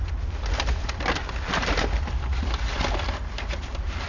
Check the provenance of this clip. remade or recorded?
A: recorded